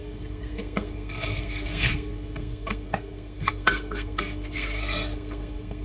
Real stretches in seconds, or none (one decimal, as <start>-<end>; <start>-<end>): none